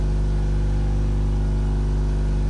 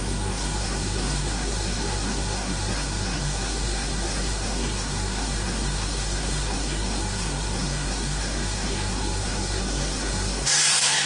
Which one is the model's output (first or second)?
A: second